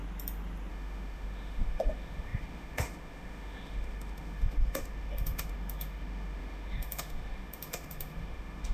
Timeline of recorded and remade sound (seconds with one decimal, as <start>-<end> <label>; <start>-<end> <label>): 0.0-0.7 recorded; 0.7-8.7 remade